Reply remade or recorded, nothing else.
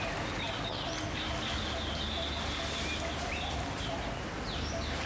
recorded